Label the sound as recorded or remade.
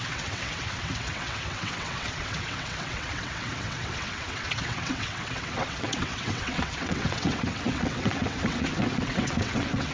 remade